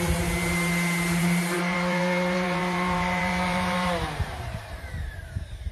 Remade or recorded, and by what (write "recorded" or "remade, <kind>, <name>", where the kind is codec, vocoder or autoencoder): remade, vocoder, BigVGAN v2